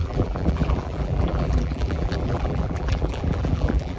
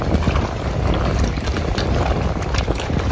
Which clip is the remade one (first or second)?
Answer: first